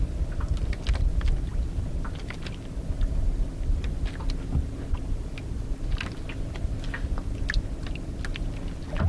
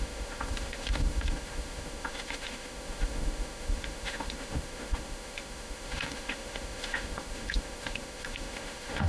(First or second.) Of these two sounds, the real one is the first